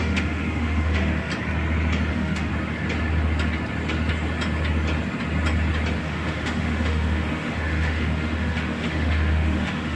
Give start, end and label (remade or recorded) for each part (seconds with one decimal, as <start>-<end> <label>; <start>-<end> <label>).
0.0-1.3 remade; 1.3-2.1 recorded; 2.1-2.5 remade; 2.5-6.0 recorded; 6.0-10.0 remade